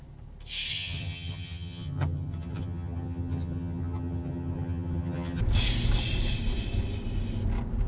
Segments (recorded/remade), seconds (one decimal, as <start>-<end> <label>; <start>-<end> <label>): 0.0-0.7 recorded; 0.7-5.4 remade; 5.4-7.9 recorded